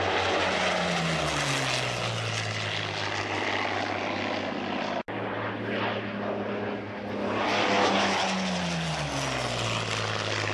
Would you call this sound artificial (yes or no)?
no